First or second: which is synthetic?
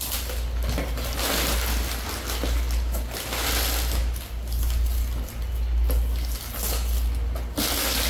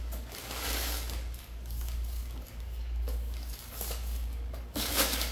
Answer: second